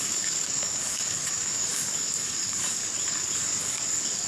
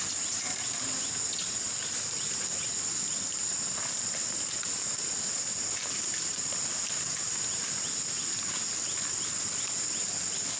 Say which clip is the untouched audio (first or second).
second